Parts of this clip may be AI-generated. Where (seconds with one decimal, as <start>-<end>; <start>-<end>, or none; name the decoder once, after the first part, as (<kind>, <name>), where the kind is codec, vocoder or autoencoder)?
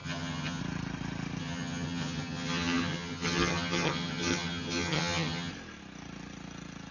0.0-0.6 (vocoder, HiFi-GAN); 1.4-5.5